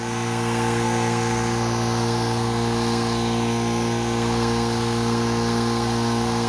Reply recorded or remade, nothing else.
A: remade